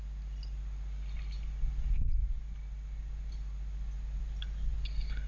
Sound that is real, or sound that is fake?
real